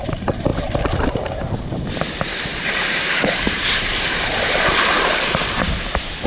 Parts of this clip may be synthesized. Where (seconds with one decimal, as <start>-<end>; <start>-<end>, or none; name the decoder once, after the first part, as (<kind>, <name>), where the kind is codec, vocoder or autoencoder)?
0.0-6.3 (vocoder, BigVGAN v2)